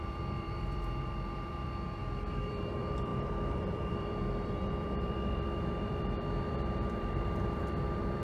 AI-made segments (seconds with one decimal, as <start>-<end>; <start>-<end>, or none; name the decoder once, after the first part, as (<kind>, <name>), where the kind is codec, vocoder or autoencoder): 0.0-8.2 (vocoder, BigVGAN v2)